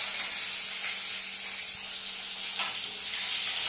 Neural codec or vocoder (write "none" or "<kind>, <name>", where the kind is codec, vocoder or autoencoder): none